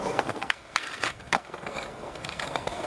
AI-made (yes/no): yes